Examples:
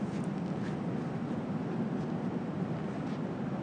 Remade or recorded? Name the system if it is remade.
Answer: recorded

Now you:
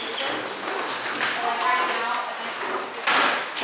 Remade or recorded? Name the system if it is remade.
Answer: recorded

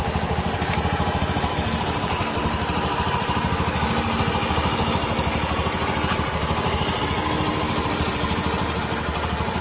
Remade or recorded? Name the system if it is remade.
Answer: recorded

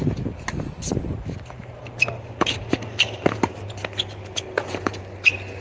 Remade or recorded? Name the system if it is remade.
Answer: recorded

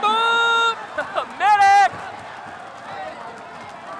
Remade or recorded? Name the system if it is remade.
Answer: recorded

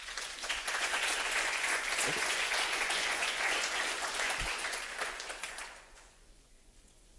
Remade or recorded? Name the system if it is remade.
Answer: remade, vocoder, Vocos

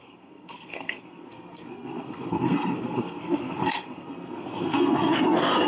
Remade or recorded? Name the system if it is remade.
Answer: remade, codec, SNAC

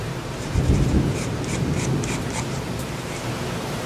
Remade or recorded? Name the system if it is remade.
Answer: remade, vocoder, BigVGAN v2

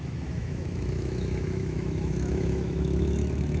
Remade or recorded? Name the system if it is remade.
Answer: remade, autoencoder, DAC-VAE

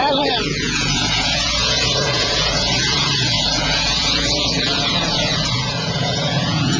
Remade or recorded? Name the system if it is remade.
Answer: remade, vocoder, Vocos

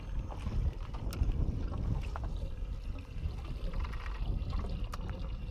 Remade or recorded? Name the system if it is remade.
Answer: recorded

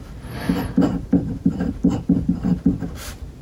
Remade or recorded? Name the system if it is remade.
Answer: remade, vocoder, BigVGAN v2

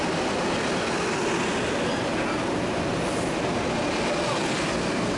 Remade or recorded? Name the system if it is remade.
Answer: recorded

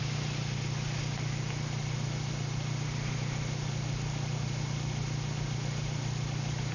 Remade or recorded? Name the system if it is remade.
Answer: recorded